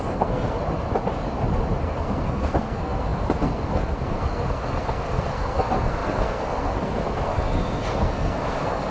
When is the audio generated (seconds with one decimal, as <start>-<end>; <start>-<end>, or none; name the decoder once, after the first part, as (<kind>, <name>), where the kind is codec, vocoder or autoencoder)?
0.0-0.6 (codec, SNAC); 1.8-8.9